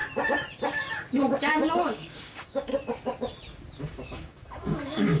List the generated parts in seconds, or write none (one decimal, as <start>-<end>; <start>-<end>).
1.5-2.7; 3.8-5.2